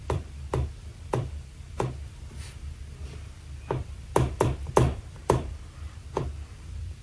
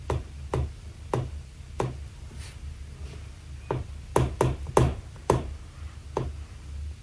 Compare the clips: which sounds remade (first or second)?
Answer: first